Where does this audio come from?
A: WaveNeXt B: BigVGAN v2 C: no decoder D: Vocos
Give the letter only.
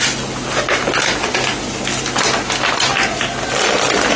C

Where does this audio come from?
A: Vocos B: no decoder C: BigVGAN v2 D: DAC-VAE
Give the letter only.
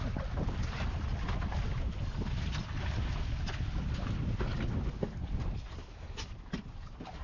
B